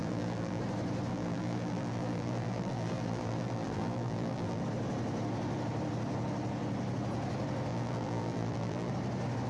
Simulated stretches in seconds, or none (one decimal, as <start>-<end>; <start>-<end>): 0.0-0.6; 1.1-4.6; 7.7-8.9